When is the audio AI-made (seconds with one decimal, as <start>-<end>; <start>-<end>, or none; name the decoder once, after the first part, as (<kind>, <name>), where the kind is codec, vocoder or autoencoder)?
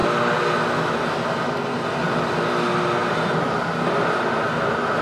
none